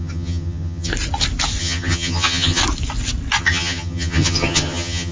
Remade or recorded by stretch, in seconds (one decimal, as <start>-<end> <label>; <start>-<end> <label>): 0.0-0.9 remade; 0.9-1.6 recorded; 1.6-2.6 remade; 2.6-3.4 recorded; 3.4-5.1 remade